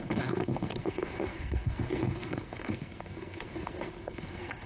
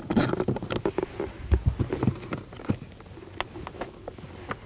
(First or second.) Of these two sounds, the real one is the second